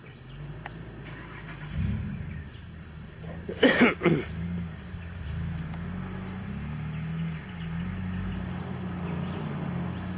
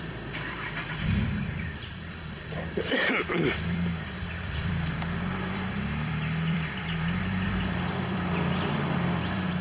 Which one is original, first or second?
first